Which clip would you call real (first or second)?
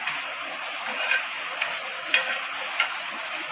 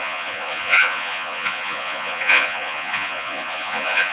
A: first